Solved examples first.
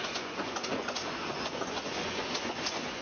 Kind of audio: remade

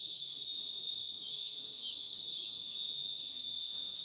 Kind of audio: remade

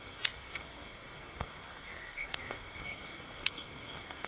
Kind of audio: remade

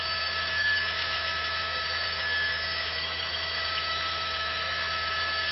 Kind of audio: remade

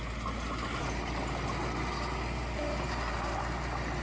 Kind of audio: recorded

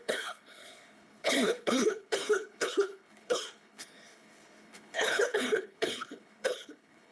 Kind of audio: remade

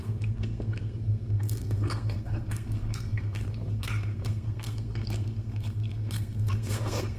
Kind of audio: remade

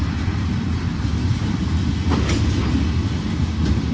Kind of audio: recorded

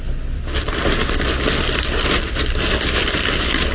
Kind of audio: recorded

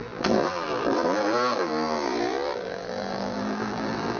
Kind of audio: remade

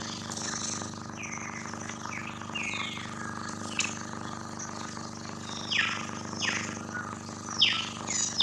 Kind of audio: recorded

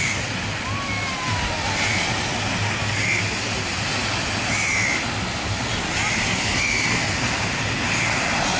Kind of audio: recorded